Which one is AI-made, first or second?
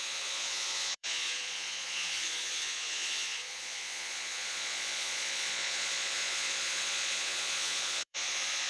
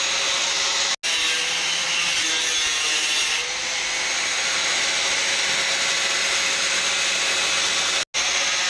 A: first